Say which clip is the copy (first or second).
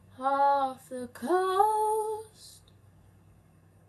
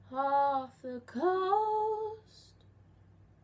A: first